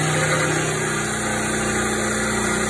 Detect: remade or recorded recorded